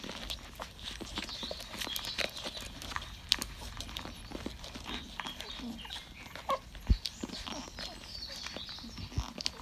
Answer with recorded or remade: recorded